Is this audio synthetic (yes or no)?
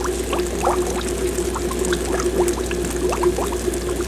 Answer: no